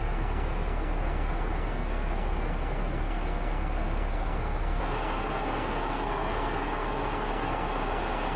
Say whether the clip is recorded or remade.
remade